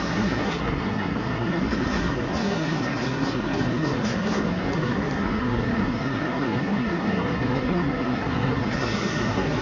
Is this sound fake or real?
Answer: fake